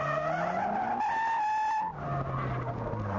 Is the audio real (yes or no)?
yes